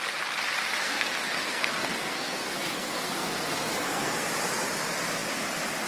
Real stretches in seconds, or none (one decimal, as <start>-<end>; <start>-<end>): 0.0-0.8; 4.3-5.9